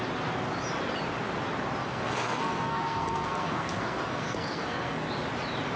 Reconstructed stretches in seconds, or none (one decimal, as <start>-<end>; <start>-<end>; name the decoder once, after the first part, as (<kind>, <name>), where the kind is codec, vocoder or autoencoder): 1.8-5.1 (codec, SNAC)